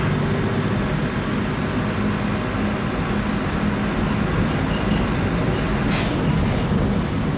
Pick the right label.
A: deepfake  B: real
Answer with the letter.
B